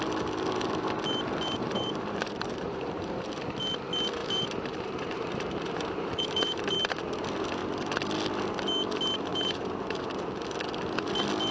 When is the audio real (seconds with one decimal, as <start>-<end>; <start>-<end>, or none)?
0.0-1.6; 3.3-4.2; 6.9-9.3; 10.2-11.5